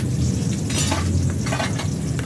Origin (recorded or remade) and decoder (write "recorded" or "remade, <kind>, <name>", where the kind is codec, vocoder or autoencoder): recorded